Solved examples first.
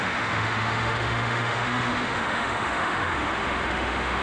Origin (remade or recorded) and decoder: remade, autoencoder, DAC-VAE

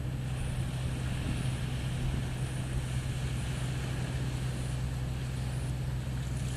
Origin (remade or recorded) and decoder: recorded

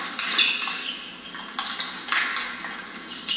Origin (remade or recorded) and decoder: recorded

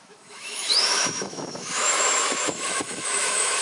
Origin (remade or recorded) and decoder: remade, autoencoder, DAC-VAE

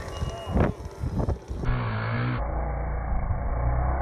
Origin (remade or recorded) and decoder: recorded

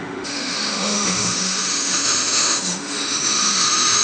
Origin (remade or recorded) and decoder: remade, autoencoder, DAC-VAE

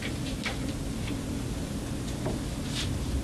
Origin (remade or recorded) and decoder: recorded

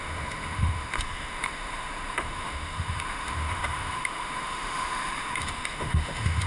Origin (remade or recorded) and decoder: remade, autoencoder, DAC-VAE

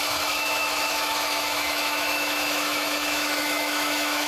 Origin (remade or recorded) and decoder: remade, autoencoder, DAC-VAE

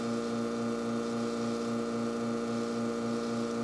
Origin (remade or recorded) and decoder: recorded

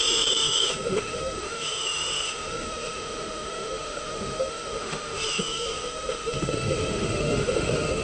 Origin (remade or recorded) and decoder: remade, autoencoder, DAC-VAE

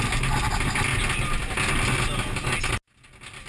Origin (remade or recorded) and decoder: recorded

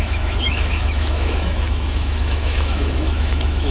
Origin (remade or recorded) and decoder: remade, autoencoder, DAC-VAE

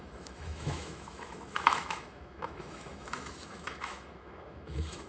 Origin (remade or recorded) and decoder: remade, autoencoder, DAC-VAE